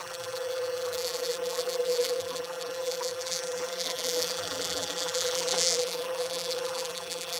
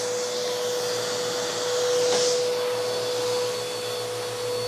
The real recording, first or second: second